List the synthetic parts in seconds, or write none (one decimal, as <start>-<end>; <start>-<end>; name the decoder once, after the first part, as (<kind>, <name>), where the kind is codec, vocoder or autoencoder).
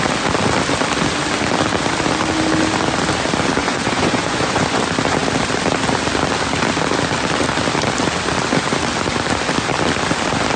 3.6-4.8 (vocoder, Vocos)